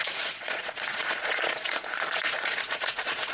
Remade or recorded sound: remade